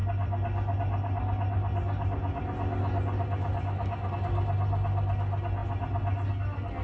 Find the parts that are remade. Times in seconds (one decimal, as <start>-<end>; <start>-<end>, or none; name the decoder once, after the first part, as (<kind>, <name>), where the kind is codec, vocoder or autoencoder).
none